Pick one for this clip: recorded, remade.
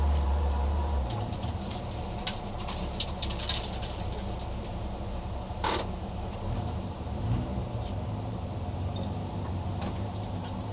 remade